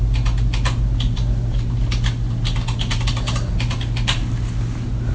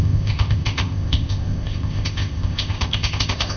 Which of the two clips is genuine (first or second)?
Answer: first